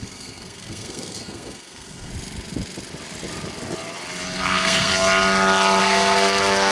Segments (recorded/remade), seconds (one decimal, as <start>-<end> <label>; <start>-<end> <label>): 0.0-2.1 remade; 2.1-4.4 recorded; 4.4-4.9 remade; 4.9-5.8 recorded; 5.8-6.7 remade